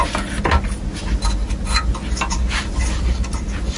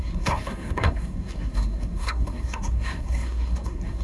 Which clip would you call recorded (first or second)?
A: first